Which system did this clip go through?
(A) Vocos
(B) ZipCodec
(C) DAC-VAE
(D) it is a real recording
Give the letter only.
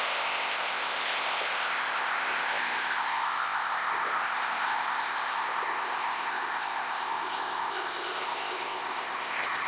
B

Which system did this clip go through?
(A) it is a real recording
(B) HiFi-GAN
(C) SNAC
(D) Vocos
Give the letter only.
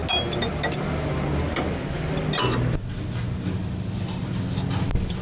A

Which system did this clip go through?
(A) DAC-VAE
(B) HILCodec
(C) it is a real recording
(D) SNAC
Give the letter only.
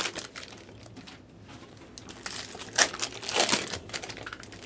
C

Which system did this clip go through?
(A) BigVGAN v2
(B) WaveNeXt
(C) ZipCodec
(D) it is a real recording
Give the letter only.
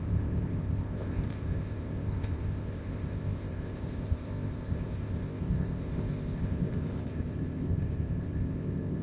C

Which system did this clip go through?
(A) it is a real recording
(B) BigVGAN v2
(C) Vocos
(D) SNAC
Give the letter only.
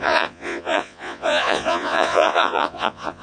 C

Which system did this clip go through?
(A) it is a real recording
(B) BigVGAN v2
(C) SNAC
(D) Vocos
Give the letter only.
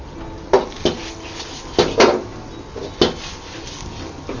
A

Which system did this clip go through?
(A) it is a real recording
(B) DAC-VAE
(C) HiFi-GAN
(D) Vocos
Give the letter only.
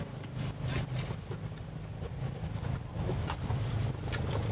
A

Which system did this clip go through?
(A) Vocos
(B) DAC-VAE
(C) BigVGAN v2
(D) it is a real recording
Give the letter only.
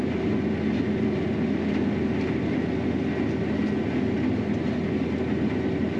D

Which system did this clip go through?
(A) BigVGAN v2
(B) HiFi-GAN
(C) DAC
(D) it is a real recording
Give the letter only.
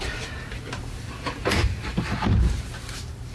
A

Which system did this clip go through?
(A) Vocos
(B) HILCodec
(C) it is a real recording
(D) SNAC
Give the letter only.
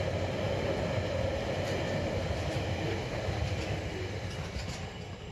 C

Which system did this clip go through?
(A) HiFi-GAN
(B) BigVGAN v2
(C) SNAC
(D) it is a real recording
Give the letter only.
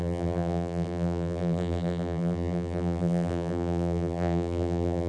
B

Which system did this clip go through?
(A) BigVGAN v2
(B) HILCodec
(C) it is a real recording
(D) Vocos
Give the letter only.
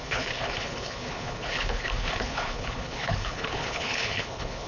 B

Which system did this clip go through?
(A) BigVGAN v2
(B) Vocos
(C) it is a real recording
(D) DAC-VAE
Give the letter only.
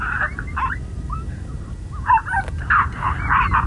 C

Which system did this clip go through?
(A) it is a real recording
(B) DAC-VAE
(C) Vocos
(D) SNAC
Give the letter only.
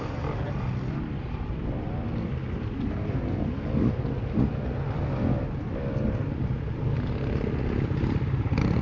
A